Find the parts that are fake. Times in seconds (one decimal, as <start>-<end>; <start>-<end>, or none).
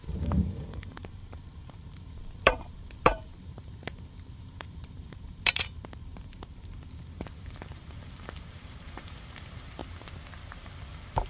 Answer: 0.0-9.8; 10.5-11.3